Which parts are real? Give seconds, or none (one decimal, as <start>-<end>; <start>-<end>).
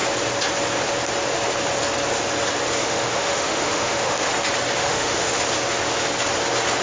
0.0-2.8; 4.3-4.8; 5.4-6.8